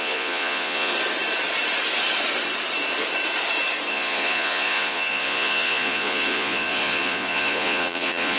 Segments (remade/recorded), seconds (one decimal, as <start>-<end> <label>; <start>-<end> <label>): 0.0-0.9 remade; 0.9-3.9 recorded; 3.9-8.4 remade